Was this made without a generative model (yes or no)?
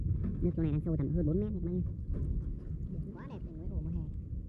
yes